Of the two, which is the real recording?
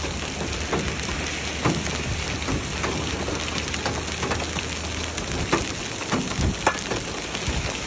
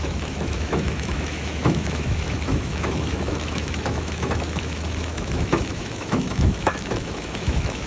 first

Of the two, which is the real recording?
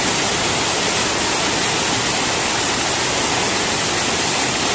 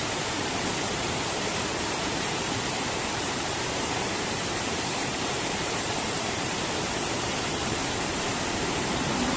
first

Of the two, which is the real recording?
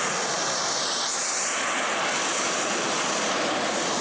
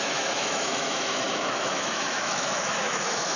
first